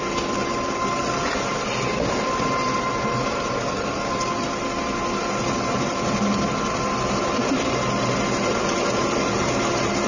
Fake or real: real